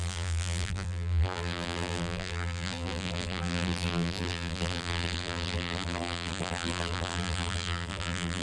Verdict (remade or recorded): remade